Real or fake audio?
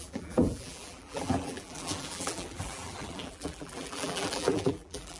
fake